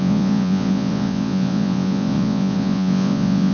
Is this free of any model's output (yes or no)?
no